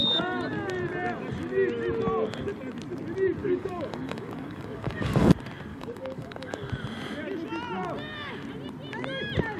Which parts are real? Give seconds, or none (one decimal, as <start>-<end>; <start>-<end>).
0.0-3.4; 5.3-5.7; 6.7-9.6